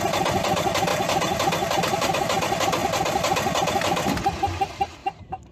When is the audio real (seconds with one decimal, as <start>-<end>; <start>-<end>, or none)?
0.0-0.9; 2.2-5.0